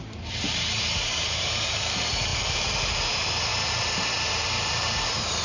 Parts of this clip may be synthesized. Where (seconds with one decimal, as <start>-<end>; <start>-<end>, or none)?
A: 0.0-5.4